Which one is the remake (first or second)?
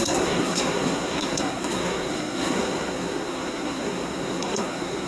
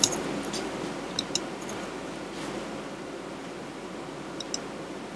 first